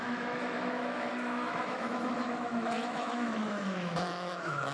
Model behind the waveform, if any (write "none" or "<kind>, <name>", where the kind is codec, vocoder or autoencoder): autoencoder, DAC-VAE